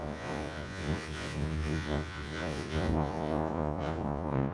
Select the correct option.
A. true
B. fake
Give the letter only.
B